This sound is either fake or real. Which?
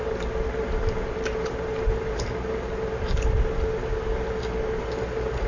real